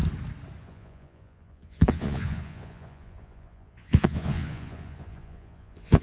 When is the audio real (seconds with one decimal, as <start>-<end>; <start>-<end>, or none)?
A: 0.0-0.6